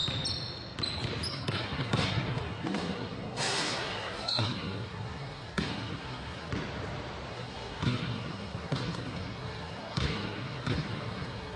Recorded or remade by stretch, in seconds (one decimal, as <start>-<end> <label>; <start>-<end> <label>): 0.0-1.3 recorded; 1.3-6.5 remade; 6.5-7.3 recorded; 7.3-11.6 remade